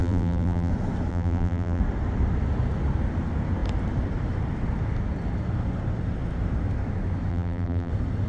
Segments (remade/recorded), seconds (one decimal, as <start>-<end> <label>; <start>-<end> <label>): 0.0-0.7 remade; 0.7-1.1 recorded; 1.1-1.8 remade; 1.8-7.3 recorded; 7.3-7.9 remade; 7.9-8.3 recorded